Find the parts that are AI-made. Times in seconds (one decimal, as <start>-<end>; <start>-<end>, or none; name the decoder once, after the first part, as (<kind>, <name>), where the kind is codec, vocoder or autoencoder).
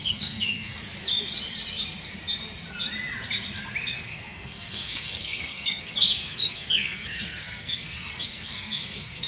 0.0-0.7 (codec, SNAC); 3.8-9.3